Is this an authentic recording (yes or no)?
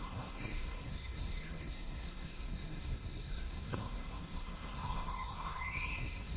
no